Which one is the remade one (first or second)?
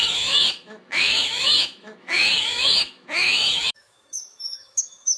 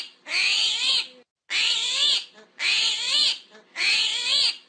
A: first